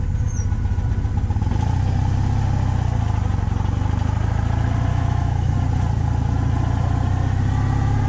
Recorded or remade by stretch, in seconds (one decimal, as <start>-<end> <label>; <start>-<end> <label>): 0.0-4.9 recorded; 4.9-5.5 remade; 5.5-8.1 recorded